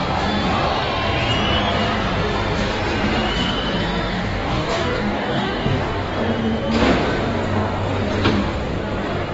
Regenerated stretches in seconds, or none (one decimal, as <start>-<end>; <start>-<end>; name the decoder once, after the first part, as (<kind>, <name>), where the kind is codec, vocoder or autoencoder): 4.1-6.1 (codec, DAC)